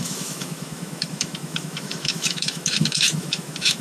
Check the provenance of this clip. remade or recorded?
remade